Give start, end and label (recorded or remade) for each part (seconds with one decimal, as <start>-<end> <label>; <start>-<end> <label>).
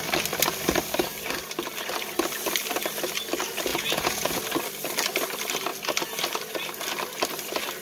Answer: 0.0-3.7 recorded; 3.7-4.4 remade; 4.4-7.8 recorded